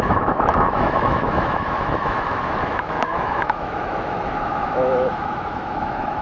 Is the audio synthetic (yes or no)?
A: yes